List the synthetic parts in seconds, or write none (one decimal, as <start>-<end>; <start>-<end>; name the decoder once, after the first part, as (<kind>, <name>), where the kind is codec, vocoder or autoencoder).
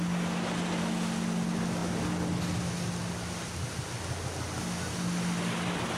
none